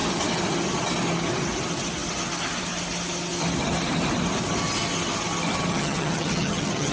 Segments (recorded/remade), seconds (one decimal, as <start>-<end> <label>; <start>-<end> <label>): 0.0-5.7 recorded; 5.7-6.9 remade